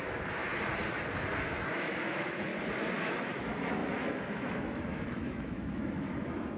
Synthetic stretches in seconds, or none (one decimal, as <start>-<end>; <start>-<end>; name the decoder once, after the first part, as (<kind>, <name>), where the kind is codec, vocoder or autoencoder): 0.0-0.4 (autoencoder, DAC-VAE); 1.5-2.5; 3.0-6.6